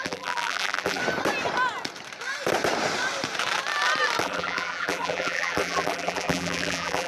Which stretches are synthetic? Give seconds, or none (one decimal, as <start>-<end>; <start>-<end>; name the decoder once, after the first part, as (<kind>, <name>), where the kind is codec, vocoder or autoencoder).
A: 0.0-1.0 (vocoder, BigVGAN v2); 4.2-7.1